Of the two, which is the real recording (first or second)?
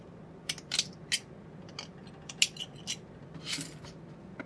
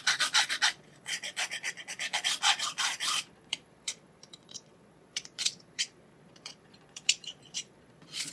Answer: first